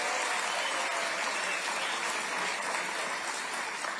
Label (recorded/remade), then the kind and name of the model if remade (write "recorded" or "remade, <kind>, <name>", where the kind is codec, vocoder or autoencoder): recorded